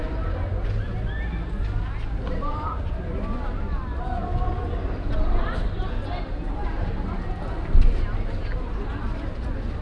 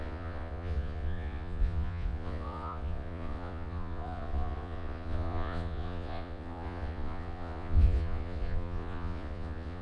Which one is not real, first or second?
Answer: second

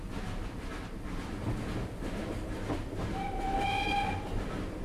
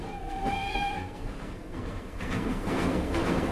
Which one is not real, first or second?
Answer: second